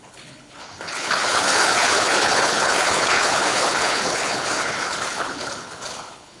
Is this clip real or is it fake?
fake